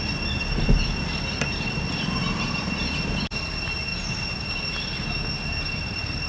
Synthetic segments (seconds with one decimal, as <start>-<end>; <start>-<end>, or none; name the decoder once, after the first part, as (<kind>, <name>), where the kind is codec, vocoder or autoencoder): none